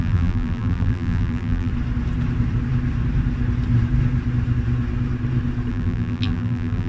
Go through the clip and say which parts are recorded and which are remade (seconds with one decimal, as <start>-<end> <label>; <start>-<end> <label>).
0.0-1.7 remade; 1.7-5.7 recorded; 5.7-6.9 remade